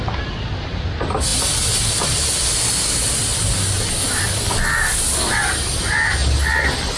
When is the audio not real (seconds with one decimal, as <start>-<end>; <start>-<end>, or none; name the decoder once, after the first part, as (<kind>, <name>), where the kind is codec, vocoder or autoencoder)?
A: none